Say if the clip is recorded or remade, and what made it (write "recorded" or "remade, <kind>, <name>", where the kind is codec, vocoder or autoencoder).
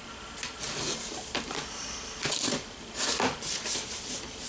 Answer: recorded